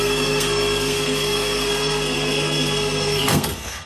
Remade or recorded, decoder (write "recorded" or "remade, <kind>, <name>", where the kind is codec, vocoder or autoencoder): remade, codec, SNAC